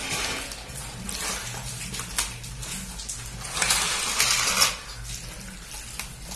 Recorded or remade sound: recorded